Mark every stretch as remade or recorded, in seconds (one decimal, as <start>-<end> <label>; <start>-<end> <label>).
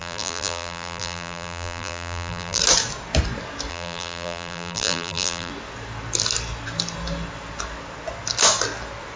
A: 0.0-2.6 remade; 2.6-3.7 recorded; 3.7-5.5 remade; 5.5-9.2 recorded